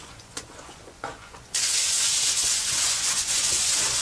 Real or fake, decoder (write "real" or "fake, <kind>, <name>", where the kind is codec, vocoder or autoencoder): fake, vocoder, Vocos